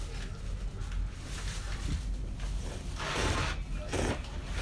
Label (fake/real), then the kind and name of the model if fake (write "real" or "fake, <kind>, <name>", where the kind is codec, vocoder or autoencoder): real